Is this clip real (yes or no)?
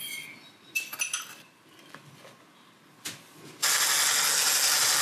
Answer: yes